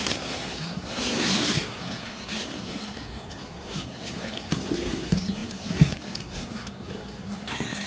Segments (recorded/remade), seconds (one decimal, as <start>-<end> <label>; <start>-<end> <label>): 0.0-7.9 remade